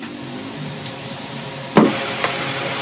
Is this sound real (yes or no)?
yes